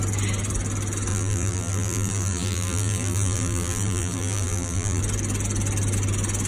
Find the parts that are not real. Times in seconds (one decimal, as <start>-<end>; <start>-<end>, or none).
1.1-5.0